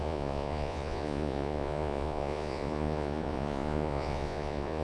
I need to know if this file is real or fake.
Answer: fake